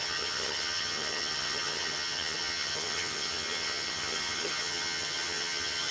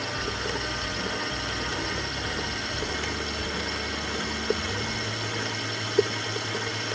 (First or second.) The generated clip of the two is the first